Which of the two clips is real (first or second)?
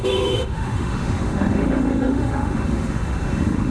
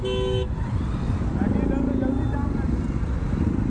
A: second